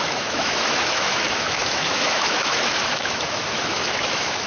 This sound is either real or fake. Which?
fake